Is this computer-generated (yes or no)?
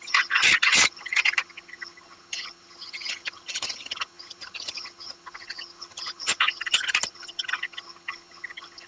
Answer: yes